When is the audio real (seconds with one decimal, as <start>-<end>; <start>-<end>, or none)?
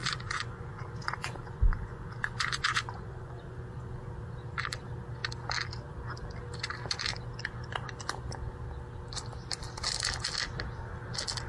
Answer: 4.1-11.5